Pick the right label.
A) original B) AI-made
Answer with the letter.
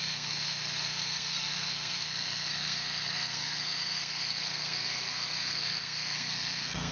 B